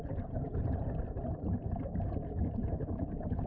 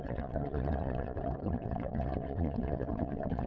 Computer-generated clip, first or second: second